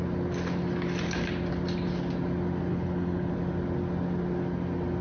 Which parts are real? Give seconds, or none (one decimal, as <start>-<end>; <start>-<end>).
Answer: 0.0-2.7; 3.3-5.0